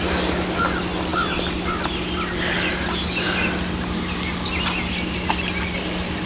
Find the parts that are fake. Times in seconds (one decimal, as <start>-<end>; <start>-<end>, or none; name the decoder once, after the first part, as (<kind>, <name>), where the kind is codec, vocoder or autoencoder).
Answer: none